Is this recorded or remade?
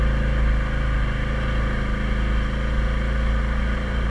recorded